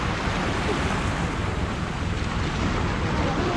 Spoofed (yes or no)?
no